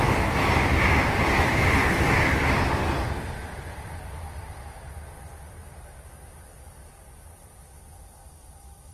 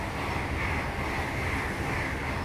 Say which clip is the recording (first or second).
second